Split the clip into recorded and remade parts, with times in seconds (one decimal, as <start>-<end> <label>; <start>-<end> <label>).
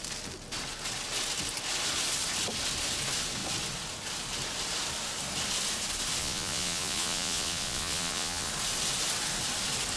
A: 0.0-6.2 recorded; 6.2-8.5 remade; 8.5-10.0 recorded